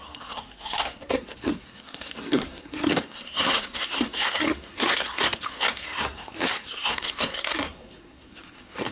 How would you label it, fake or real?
fake